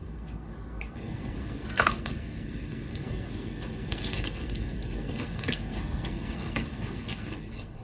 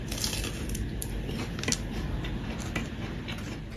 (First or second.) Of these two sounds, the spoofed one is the first